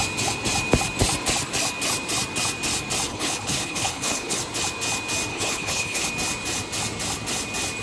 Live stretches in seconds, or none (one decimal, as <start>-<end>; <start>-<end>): 0.0-3.1; 4.4-5.3; 6.1-7.8